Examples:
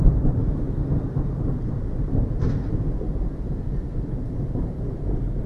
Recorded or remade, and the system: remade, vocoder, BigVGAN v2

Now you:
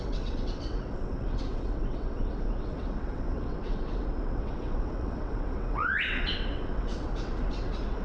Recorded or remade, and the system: remade, vocoder, WaveNeXt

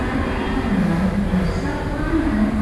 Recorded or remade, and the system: recorded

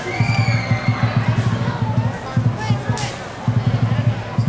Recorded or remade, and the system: recorded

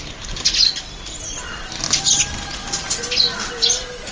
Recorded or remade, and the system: recorded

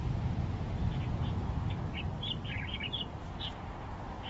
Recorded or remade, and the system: recorded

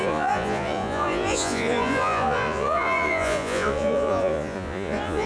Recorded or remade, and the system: remade, vocoder, Vocos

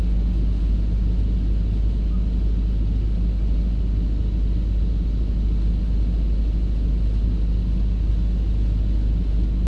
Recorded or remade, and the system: recorded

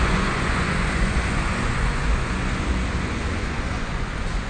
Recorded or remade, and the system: remade, vocoder, Vocos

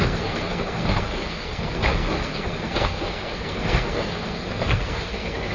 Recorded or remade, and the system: remade, codec, SNAC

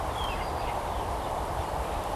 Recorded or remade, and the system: remade, vocoder, BigVGAN v2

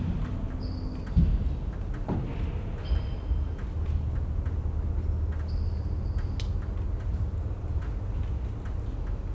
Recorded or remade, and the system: recorded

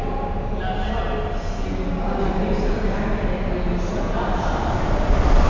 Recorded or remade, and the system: recorded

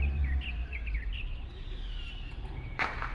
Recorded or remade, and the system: remade, vocoder, BigVGAN v2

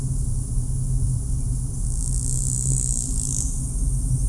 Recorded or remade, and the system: recorded